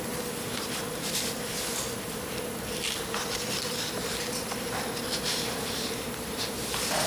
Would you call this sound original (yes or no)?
no